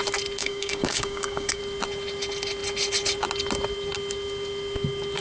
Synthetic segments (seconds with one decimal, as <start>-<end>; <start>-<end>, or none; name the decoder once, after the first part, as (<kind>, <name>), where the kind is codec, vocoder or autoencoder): 0.4-1.6 (codec, DAC)